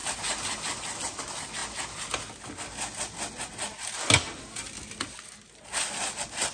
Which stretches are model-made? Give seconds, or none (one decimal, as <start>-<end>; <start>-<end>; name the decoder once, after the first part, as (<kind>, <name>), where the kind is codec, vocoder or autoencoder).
none